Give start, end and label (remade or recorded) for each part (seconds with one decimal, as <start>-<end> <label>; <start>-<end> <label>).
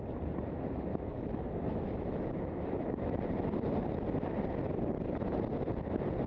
0.0-0.9 recorded; 0.9-3.2 remade; 3.2-6.3 recorded